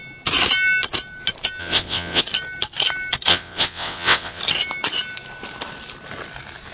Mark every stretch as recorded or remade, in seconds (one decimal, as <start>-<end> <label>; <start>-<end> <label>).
0.0-1.6 recorded; 1.6-2.2 remade; 2.2-3.3 recorded; 3.3-4.4 remade; 4.4-6.7 recorded